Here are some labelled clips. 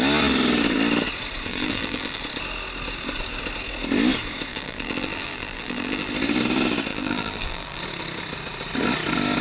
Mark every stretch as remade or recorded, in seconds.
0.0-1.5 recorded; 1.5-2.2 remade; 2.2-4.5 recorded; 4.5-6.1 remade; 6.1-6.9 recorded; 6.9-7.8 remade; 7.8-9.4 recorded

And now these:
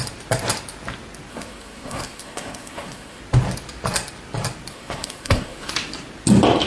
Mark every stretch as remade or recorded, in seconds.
0.0-1.3 recorded; 1.3-3.2 remade; 3.2-4.7 recorded; 4.7-5.7 remade; 5.7-6.7 recorded

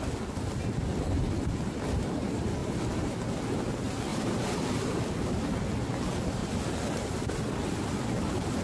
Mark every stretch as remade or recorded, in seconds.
0.0-2.6 recorded; 2.6-3.1 remade; 3.1-4.1 recorded; 4.1-5.6 remade; 5.6-8.6 recorded

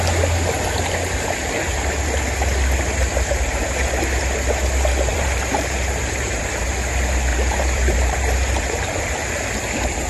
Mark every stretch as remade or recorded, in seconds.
0.0-5.1 recorded; 5.1-6.7 remade; 6.7-7.3 recorded; 7.3-10.1 remade

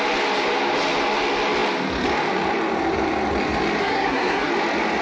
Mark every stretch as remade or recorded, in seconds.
0.0-3.8 recorded; 3.8-4.5 remade; 4.5-5.0 recorded